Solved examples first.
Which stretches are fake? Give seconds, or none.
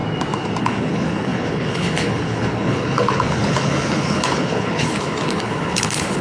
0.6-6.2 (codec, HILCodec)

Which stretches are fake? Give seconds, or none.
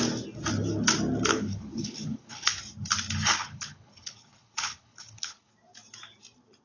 1.3-2.6 (codec, HILCodec); 3.4-5.5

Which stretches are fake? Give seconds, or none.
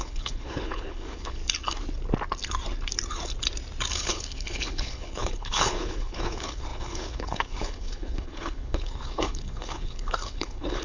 0.0-1.4 (codec, HILCodec); 3.9-10.8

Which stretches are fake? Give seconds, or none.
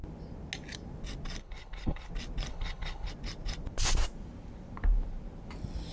1.4-2.1 (codec, HILCodec); 2.5-3.1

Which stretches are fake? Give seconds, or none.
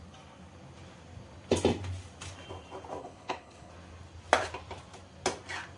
3.0-3.7 (codec, HILCodec)